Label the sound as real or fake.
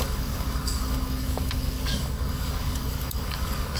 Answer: fake